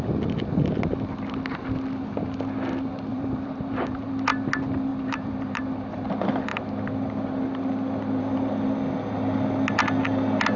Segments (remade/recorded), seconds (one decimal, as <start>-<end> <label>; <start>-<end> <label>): 0.0-3.1 recorded; 3.1-4.1 remade; 4.1-4.9 recorded; 4.9-5.6 remade; 5.6-10.6 recorded